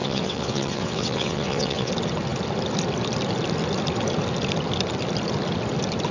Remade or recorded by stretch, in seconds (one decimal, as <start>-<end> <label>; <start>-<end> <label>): 0.0-1.9 remade; 1.9-6.1 recorded